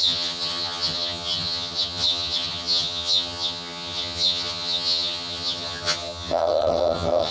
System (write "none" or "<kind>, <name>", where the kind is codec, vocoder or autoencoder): vocoder, HiFi-GAN